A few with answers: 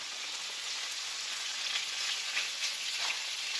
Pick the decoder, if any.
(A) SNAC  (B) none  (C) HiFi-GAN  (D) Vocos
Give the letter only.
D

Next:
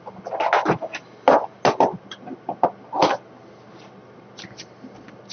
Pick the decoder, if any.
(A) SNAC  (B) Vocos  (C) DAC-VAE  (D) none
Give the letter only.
D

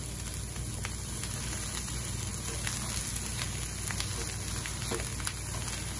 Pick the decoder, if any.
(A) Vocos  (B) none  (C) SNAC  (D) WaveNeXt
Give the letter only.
B